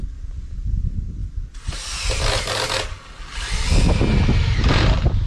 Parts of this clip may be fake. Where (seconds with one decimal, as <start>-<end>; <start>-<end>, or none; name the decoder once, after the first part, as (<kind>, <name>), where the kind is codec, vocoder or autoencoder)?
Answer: none